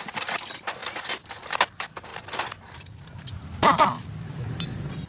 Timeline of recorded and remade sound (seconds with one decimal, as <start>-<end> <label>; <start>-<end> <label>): 0.0-0.8 remade; 0.8-1.3 recorded; 1.3-5.1 remade